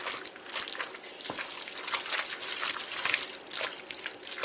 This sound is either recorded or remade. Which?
recorded